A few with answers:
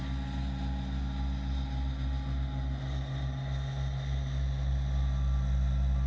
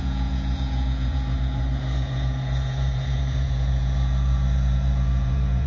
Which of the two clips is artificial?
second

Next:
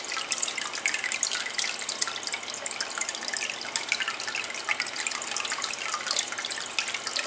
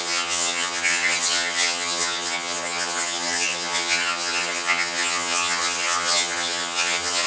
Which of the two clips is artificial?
second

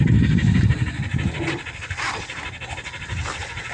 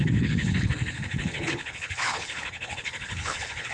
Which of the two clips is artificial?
second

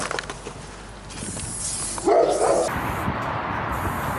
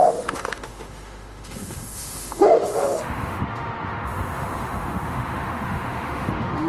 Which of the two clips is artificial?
second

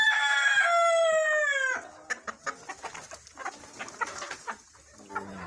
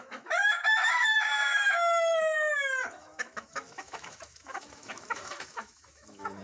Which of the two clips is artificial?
second